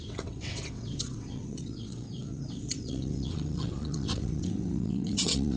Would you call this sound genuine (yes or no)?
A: no